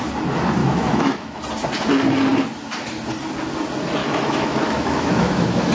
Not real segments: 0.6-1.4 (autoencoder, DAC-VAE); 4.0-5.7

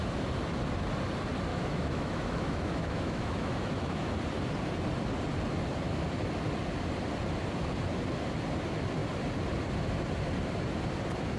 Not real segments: 1.5-4.1 (autoencoder, DAC-VAE)

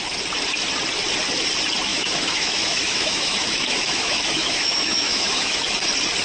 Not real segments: 1.9-5.6 (autoencoder, DAC-VAE)

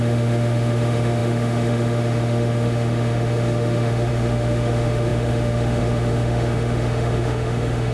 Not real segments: 0.0-7.9 (autoencoder, DAC-VAE)